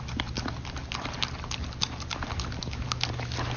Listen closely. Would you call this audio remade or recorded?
recorded